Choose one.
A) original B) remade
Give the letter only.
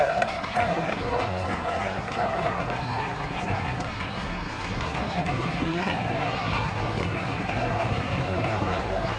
B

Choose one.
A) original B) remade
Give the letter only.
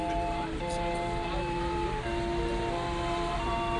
B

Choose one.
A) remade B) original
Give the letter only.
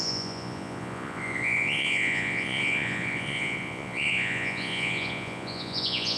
A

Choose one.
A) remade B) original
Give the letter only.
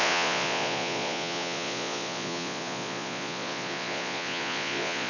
A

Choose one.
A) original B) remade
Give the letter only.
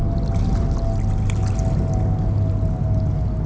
A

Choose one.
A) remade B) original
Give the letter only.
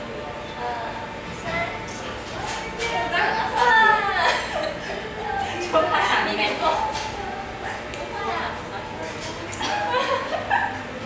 B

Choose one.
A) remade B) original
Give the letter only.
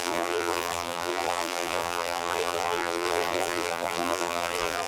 A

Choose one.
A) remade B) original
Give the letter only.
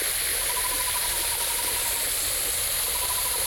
B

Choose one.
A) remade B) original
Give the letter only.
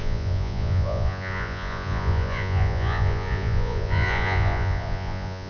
A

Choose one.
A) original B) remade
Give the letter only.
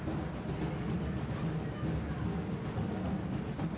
A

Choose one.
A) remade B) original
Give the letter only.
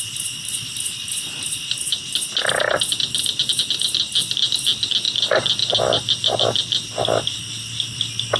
B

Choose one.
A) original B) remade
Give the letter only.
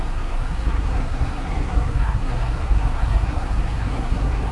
B